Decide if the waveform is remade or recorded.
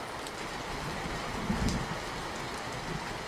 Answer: recorded